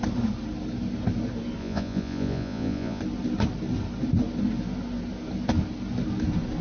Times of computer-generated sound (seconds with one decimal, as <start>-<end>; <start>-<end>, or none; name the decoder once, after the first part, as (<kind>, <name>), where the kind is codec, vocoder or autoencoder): 1.6-3.0 (vocoder, Vocos)